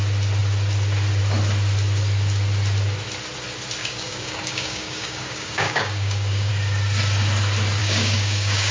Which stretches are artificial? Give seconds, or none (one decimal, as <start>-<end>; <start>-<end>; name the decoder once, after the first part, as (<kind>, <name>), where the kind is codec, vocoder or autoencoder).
3.8-6.5 (codec, DAC); 7.8-8.7